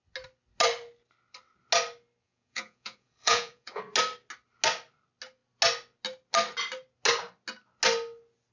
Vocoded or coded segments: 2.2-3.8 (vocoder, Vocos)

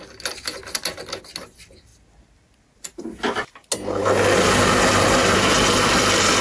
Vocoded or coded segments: none

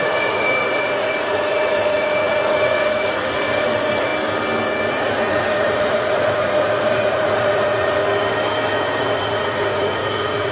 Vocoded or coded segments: 0.0-4.1 (vocoder, Vocos); 4.9-8.0; 8.7-10.5

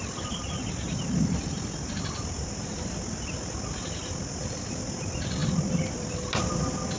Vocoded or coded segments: none

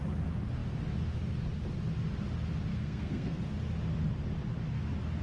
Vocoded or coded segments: 2.7-3.4 (codec, SNAC)

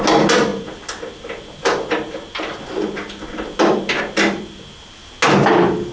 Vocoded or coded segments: none